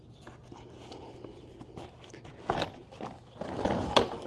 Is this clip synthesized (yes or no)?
no